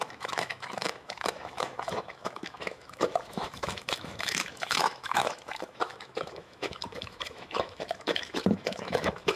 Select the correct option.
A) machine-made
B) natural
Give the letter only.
A